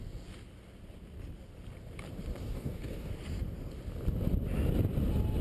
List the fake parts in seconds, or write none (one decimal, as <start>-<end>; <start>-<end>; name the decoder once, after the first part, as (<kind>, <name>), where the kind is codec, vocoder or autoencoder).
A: 2.4-3.1 (codec, DAC)